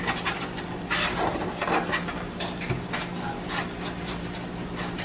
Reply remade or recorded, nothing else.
recorded